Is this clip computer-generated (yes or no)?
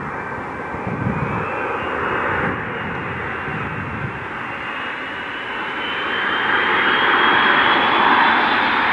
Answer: no